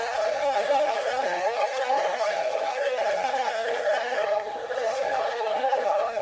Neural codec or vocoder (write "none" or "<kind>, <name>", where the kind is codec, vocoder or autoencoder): codec, SNAC